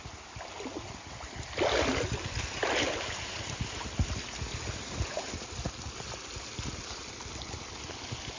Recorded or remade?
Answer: recorded